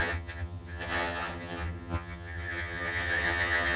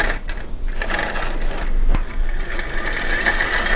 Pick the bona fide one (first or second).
second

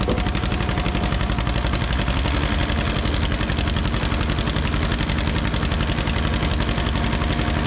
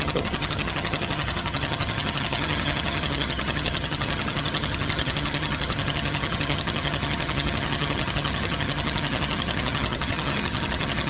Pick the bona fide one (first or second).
first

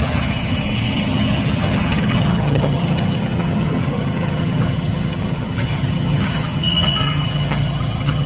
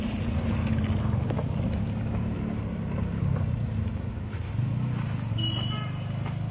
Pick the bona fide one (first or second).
second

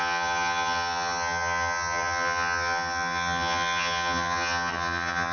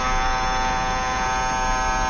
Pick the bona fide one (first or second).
second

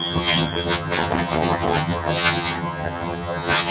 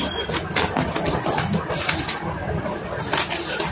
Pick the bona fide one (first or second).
second